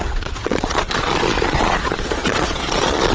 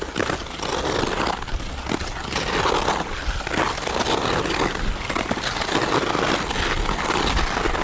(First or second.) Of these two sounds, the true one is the second